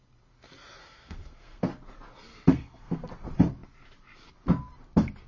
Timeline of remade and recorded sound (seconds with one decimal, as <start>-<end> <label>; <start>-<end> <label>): 0.0-0.8 recorded; 0.8-1.6 remade; 1.6-2.5 recorded; 2.5-3.1 remade; 3.1-5.3 recorded

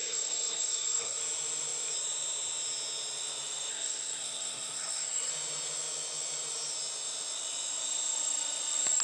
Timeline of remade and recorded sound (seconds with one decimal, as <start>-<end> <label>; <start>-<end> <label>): 0.0-1.2 remade; 1.2-3.7 recorded; 3.7-5.3 remade; 5.3-9.0 recorded